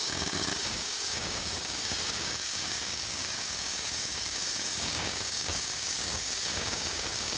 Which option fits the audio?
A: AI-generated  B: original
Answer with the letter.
A